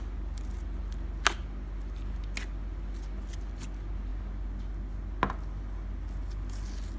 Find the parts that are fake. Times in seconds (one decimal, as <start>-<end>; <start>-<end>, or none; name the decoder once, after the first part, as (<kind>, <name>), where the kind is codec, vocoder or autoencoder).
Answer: none